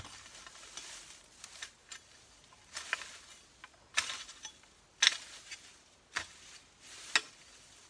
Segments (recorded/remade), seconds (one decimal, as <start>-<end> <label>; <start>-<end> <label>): 0.0-7.9 recorded